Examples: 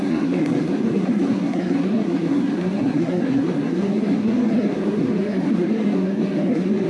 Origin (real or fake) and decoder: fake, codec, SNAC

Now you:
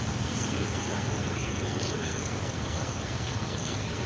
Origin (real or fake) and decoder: fake, codec, SNAC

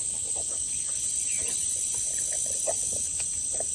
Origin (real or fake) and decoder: real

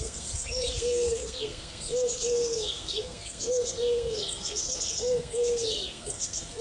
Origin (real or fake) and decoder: fake, codec, SNAC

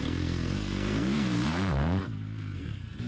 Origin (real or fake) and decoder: fake, codec, SNAC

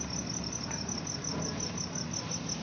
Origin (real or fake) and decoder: real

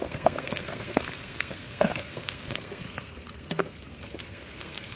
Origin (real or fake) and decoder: fake, codec, SNAC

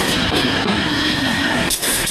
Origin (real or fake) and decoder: fake, codec, SNAC